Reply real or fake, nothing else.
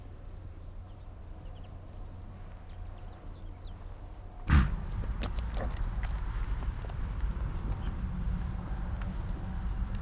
real